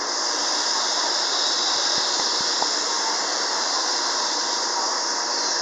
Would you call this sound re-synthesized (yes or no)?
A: yes